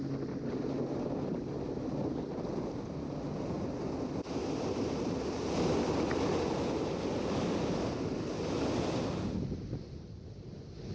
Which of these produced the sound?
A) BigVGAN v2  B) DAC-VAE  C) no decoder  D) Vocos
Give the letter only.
C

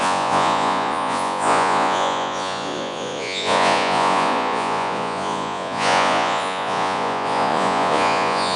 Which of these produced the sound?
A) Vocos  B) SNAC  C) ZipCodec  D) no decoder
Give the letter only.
A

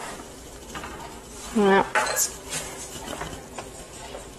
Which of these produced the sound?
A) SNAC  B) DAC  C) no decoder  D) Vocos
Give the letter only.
C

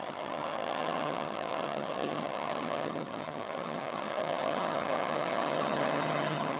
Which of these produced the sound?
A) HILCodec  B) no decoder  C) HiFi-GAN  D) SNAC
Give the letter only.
C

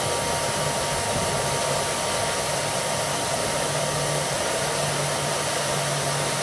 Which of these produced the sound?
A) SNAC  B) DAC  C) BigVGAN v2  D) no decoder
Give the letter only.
D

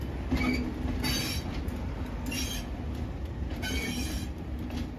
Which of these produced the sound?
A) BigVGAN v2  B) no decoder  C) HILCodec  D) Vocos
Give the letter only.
B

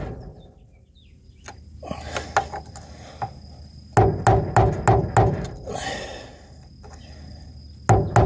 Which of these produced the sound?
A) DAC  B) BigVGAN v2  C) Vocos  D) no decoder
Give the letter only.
D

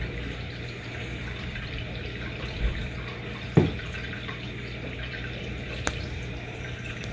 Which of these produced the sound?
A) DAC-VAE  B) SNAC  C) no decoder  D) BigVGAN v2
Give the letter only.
D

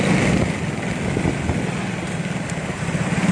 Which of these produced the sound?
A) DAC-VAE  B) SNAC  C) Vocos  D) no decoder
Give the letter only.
D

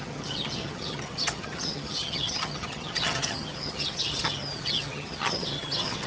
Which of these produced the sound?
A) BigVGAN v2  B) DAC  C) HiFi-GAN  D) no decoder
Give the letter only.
C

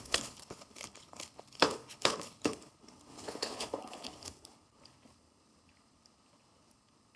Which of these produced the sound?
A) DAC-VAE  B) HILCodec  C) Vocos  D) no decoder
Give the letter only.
B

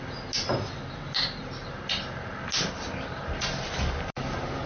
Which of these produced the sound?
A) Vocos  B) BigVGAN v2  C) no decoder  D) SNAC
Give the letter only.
C